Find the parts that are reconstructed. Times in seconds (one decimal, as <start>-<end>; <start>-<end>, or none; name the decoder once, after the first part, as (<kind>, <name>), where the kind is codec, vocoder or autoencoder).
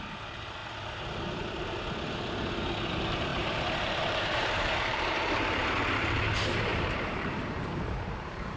3.3-6.2 (vocoder, BigVGAN v2); 6.7-8.6